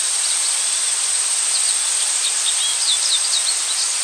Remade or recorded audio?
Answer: recorded